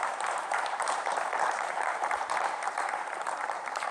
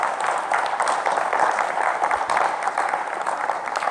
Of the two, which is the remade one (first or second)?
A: first